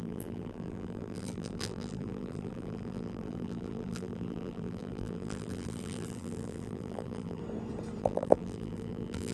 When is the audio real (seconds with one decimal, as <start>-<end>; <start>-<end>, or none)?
7.4-8.0